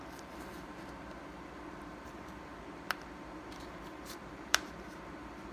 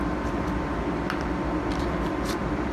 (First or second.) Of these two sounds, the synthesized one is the first